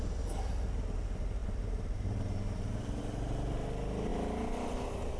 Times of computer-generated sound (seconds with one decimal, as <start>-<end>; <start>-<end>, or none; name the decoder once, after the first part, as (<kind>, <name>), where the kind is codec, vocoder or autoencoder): 1.4-3.0 (vocoder, BigVGAN v2)